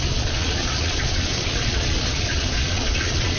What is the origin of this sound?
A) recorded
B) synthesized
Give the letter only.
B